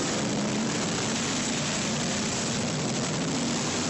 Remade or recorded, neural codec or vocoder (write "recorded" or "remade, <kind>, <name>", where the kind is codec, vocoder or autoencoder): remade, vocoder, BigVGAN v2